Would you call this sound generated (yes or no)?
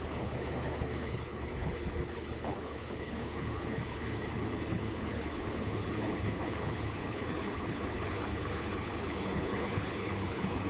yes